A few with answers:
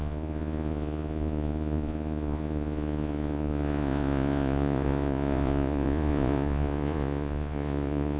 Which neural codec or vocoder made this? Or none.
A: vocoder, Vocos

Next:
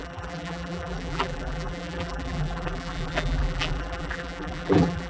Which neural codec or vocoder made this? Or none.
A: vocoder, BigVGAN v2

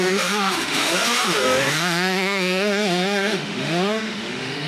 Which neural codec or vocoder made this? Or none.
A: autoencoder, DAC-VAE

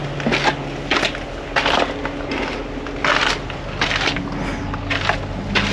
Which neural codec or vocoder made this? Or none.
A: none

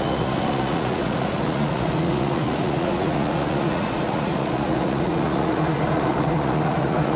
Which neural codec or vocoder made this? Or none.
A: vocoder, Vocos